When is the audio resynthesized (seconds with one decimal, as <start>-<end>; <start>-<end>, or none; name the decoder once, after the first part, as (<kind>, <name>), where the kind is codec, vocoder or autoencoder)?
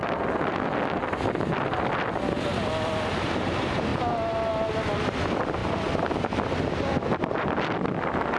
none